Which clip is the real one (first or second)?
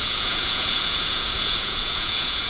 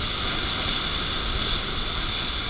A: second